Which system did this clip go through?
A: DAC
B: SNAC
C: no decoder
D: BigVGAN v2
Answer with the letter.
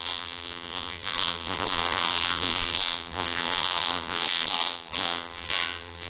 D